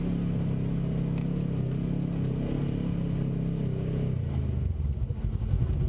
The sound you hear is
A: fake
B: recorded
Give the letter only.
B